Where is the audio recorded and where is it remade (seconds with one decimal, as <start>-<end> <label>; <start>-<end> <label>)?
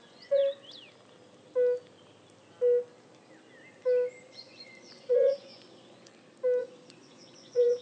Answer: 0.0-0.4 remade; 0.4-4.2 recorded; 4.2-6.1 remade; 6.1-6.6 recorded; 6.6-7.8 remade